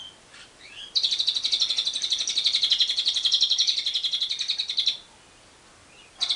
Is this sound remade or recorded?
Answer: recorded